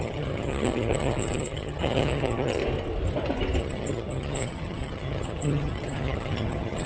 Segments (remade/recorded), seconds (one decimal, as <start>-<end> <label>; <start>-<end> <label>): 0.0-2.6 remade; 2.6-3.6 recorded; 3.6-6.9 remade